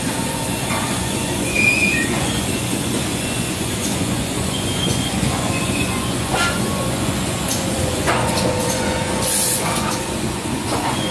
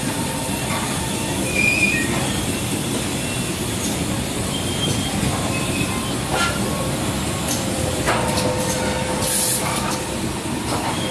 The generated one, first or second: first